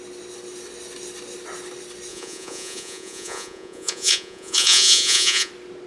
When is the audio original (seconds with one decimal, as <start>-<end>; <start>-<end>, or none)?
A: 0.0-2.1; 5.5-5.9